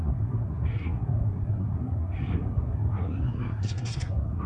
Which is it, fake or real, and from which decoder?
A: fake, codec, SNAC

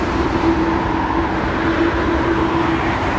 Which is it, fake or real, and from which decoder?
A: fake, vocoder, BigVGAN v2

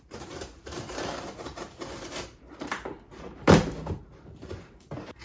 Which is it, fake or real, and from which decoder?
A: fake, vocoder, BigVGAN v2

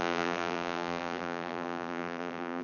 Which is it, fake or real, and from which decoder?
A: fake, vocoder, BigVGAN v2